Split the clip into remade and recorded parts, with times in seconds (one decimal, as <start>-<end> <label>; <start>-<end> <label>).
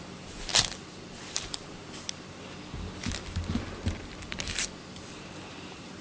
0.0-0.5 remade; 0.5-1.2 recorded; 1.2-1.8 remade; 1.8-5.4 recorded; 5.4-6.0 remade